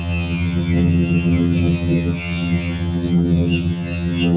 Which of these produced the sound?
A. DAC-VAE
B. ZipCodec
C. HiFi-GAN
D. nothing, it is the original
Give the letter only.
C